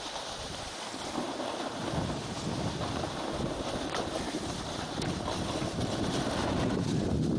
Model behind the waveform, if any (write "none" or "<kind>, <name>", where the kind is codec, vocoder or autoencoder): none